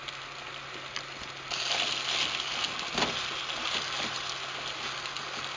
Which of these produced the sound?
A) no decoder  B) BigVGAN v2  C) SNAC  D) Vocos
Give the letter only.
A